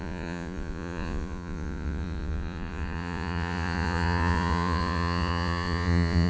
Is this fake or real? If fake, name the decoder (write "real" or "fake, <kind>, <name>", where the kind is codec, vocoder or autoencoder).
fake, vocoder, Vocos